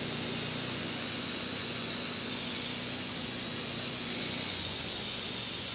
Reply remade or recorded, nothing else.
remade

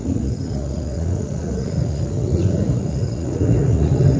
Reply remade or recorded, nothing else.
remade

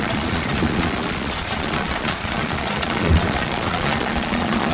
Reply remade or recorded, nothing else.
remade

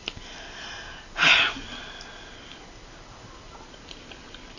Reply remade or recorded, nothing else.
recorded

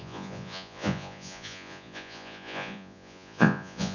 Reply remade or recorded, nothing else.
remade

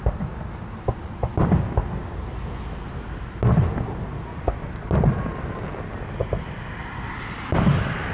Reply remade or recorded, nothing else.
recorded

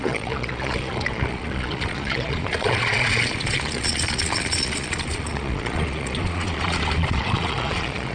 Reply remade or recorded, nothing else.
remade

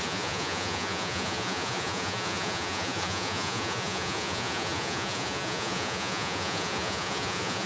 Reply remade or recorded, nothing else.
remade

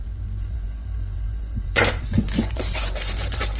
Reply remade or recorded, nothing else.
remade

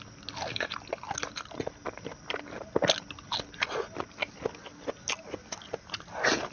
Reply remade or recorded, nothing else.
recorded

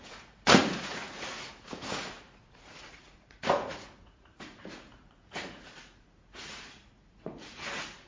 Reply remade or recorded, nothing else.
remade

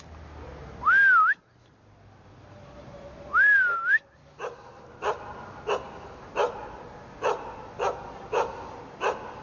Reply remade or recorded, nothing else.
recorded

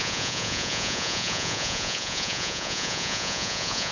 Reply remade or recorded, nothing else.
remade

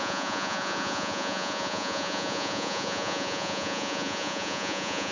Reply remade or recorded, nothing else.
remade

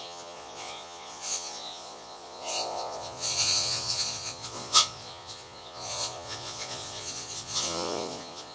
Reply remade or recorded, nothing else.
remade